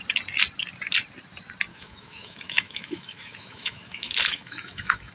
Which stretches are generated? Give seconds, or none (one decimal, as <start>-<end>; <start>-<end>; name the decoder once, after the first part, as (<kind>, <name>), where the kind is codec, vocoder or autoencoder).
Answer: 1.7-5.1 (autoencoder, DAC-VAE)